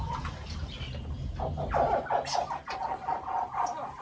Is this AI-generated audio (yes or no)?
no